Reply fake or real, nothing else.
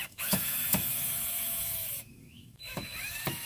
fake